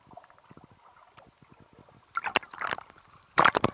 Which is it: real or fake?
real